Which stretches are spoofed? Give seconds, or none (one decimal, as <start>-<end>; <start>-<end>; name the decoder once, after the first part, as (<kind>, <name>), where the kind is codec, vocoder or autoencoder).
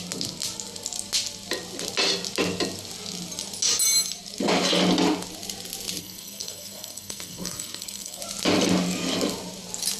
6.0-8.2 (codec, SNAC)